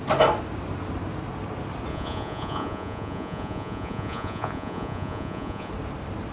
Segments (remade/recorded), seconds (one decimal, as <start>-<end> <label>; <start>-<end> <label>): 0.0-1.9 recorded; 1.9-5.7 remade; 5.7-6.3 recorded